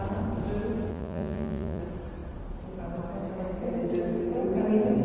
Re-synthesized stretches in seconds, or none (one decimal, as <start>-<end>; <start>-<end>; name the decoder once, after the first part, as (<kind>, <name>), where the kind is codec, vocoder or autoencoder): 0.9-1.8 (vocoder, Vocos)